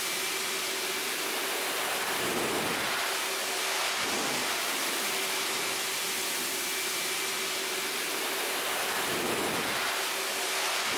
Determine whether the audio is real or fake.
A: real